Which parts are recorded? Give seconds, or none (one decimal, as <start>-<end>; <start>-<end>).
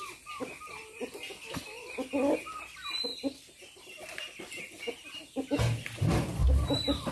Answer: 0.0-7.1